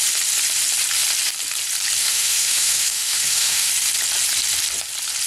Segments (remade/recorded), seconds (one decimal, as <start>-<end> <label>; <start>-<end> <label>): 0.0-2.0 recorded; 2.0-3.7 remade; 3.7-5.3 recorded